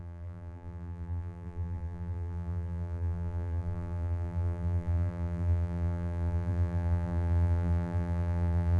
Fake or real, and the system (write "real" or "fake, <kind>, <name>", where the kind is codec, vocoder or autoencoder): fake, vocoder, BigVGAN v2